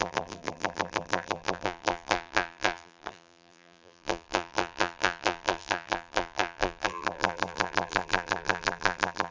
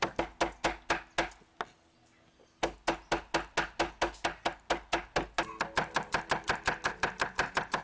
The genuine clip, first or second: second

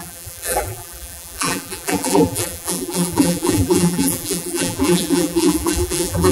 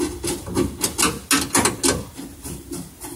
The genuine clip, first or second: second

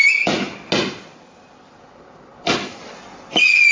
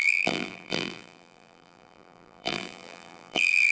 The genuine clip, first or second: first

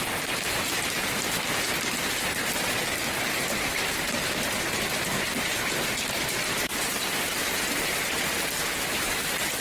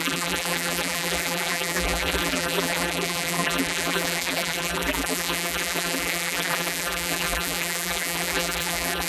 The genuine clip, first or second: first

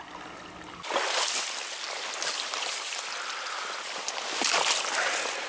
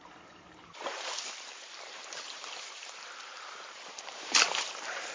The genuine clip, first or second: first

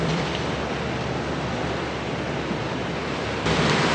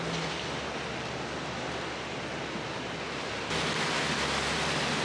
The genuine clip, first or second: second